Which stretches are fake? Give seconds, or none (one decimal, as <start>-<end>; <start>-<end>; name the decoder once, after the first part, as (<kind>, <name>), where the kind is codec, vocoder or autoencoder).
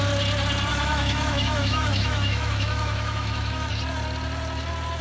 0.7-3.7 (autoencoder, DAC-VAE)